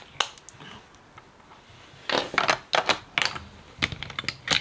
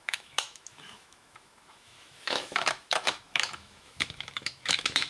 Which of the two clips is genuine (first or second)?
first